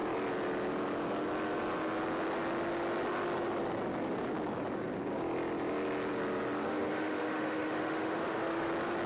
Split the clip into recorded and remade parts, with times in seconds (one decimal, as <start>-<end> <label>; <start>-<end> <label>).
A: 0.0-6.6 recorded; 6.6-8.7 remade; 8.7-9.1 recorded